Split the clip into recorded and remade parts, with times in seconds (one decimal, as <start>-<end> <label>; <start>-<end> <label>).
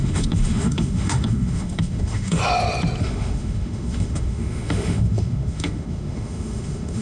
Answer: 0.0-2.4 remade; 2.4-3.0 recorded; 3.0-7.0 remade